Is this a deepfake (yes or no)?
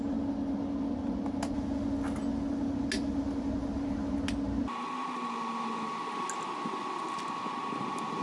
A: no